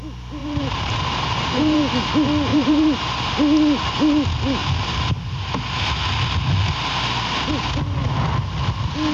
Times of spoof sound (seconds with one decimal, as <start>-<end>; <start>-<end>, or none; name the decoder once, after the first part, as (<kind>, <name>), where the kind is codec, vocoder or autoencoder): 0.4-1.8 (vocoder, BigVGAN v2); 2.5-3.3; 4.6-5.6